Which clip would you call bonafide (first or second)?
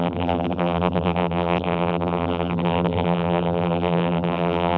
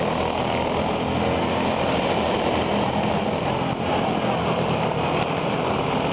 second